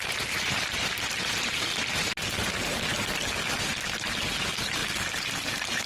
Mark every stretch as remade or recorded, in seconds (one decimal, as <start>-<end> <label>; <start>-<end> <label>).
0.0-4.8 remade; 4.8-5.3 recorded; 5.3-5.9 remade